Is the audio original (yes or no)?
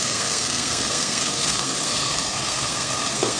no